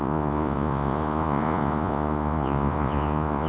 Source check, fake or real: fake